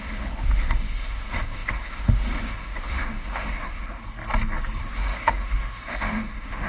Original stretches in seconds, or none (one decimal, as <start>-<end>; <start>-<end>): 4.0-4.8